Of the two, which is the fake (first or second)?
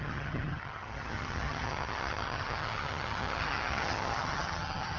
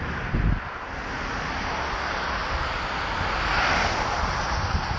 first